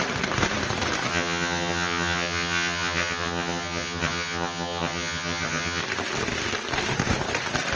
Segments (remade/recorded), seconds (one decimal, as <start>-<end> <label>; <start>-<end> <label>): 0.0-1.1 recorded; 1.1-5.8 remade; 5.8-7.8 recorded